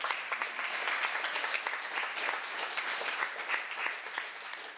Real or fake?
real